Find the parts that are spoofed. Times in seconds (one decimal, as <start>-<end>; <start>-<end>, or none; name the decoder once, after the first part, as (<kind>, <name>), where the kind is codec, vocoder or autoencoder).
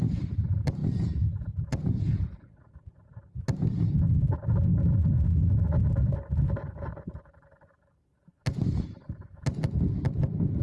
0.8-2.3 (vocoder, Vocos)